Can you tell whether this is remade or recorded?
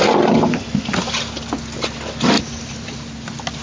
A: recorded